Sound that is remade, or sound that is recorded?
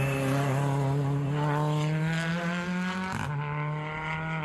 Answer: recorded